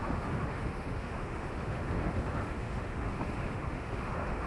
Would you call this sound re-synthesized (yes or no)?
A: yes